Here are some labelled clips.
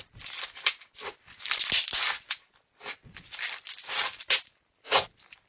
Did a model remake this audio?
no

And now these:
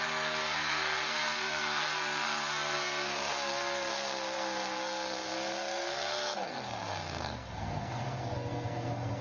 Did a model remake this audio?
yes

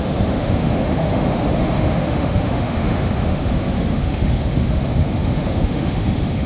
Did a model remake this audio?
yes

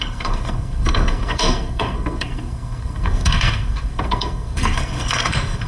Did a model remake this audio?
yes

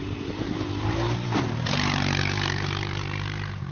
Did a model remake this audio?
yes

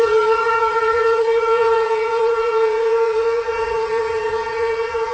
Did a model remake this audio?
yes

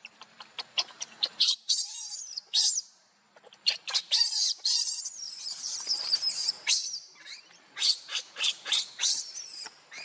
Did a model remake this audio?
yes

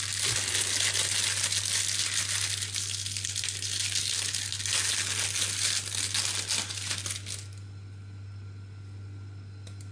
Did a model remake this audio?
no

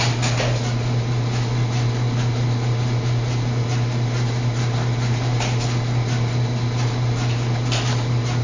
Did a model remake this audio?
no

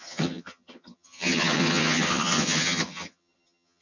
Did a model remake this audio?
yes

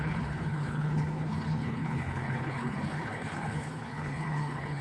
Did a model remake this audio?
yes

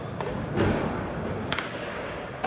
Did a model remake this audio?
yes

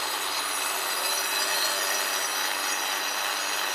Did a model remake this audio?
no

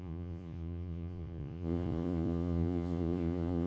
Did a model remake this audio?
yes